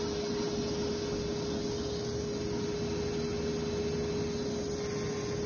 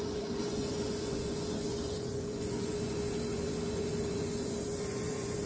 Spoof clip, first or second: second